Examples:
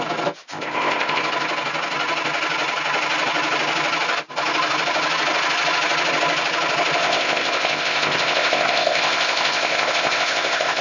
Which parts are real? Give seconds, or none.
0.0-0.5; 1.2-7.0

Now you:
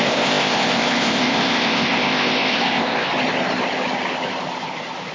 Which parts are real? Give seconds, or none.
3.1-5.1

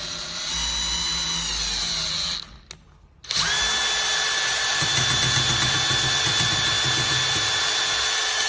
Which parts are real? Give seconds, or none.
0.0-8.5

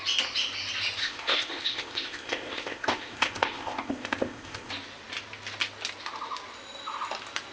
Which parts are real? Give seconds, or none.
0.0-1.0; 4.7-7.5

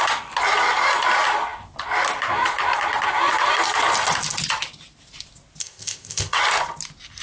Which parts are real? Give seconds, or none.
0.0-5.6; 6.4-7.2